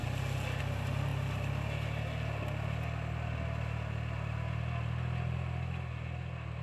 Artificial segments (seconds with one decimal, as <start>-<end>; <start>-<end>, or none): none